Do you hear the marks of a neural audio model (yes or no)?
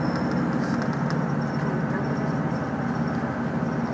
no